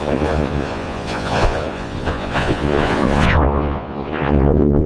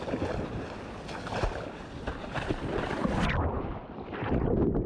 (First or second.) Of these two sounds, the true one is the second